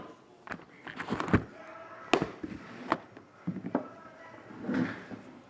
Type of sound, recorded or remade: recorded